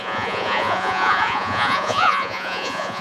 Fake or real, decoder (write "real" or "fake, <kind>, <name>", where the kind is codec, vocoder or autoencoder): fake, vocoder, Vocos